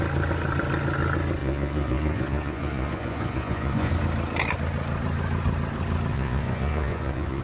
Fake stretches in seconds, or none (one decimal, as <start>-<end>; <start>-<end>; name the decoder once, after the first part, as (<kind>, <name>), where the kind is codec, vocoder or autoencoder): 1.4-3.9 (vocoder, Vocos); 6.1-7.4